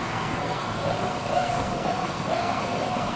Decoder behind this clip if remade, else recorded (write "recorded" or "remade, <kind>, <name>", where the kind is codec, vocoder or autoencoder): remade, codec, SNAC